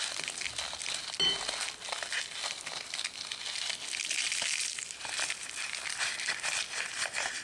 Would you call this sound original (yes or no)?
yes